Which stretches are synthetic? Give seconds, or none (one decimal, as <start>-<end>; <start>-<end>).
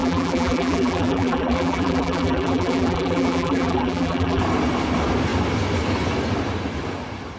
0.0-4.4